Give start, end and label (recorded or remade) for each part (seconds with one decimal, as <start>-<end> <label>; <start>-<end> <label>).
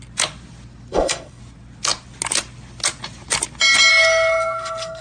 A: 0.0-0.9 recorded; 0.9-1.4 remade; 1.4-3.9 recorded; 3.9-5.0 remade